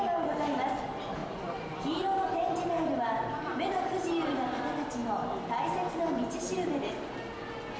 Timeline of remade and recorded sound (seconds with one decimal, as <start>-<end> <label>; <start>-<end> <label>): 0.0-7.8 recorded